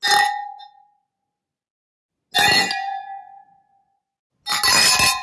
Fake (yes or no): no